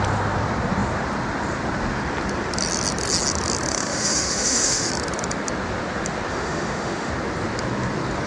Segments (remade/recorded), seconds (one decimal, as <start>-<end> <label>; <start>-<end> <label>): 0.0-3.7 recorded; 3.7-4.9 remade; 4.9-6.3 recorded; 6.3-7.1 remade; 7.1-8.3 recorded